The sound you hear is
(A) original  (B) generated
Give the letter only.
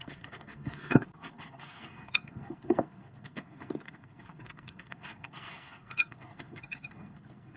B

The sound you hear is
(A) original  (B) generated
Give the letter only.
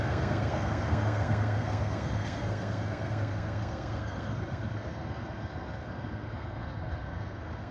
B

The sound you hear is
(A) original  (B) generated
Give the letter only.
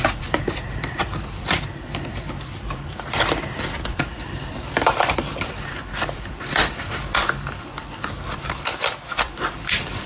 B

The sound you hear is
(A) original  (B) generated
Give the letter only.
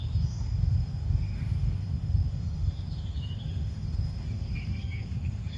B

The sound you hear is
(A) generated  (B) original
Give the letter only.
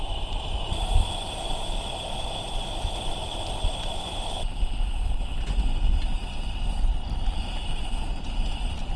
B